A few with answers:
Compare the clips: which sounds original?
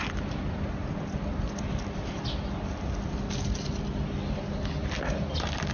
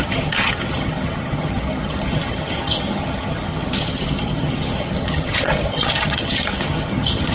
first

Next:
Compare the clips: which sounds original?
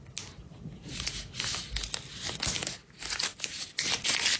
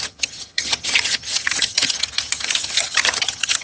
first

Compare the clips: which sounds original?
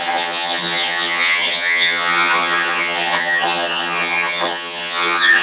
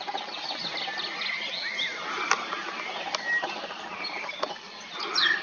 second